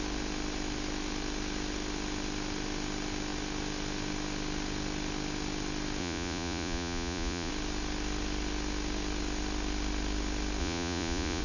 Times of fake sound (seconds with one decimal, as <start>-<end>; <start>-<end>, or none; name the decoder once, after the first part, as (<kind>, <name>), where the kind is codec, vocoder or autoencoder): 6.0-7.5 (vocoder, Vocos); 10.6-11.4